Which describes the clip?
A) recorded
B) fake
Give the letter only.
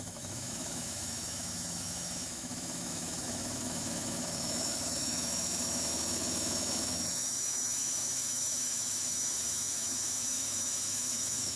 B